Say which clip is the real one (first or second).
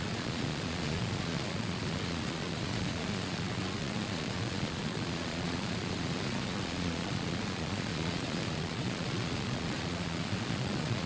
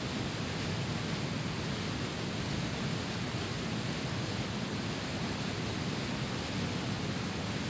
second